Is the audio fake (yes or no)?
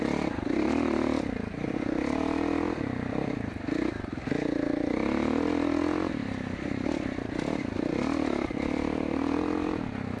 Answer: no